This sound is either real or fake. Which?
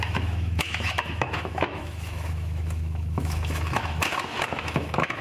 fake